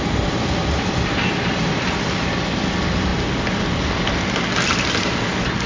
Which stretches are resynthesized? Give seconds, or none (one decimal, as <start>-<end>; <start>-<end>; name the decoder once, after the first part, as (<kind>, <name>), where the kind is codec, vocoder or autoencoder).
none